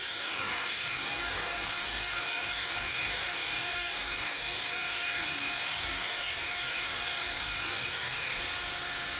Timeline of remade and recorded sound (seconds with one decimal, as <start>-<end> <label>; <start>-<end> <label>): 0.0-8.4 remade; 8.4-9.2 recorded

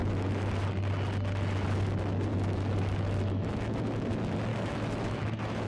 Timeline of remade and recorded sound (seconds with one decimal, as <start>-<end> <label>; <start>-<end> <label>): 0.0-0.5 remade; 0.5-2.3 recorded; 2.3-3.8 remade; 3.8-4.5 recorded; 4.5-5.7 remade

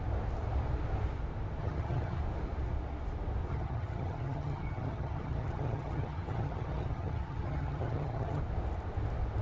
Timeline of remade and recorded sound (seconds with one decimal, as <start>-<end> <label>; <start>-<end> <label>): 0.0-1.6 recorded; 1.6-2.2 remade; 2.2-3.5 recorded; 3.5-8.4 remade; 8.4-9.4 recorded

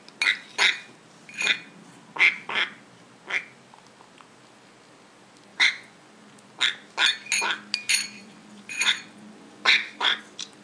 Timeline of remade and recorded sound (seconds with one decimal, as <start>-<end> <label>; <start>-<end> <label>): 0.0-5.5 recorded; 5.5-6.5 remade; 6.5-8.2 recorded; 8.2-10.2 remade; 10.2-10.6 recorded